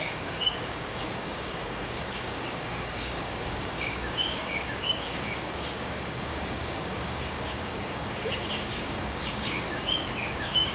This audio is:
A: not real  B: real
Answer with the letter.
A